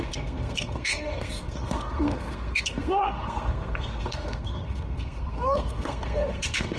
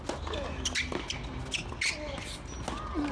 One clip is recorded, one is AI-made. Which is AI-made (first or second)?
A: first